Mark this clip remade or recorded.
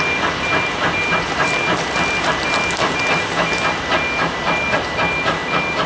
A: recorded